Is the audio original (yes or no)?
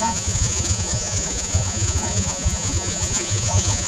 no